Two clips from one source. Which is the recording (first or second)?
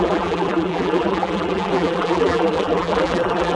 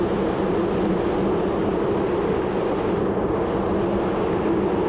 second